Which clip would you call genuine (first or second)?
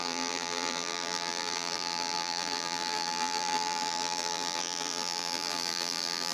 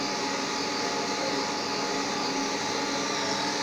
second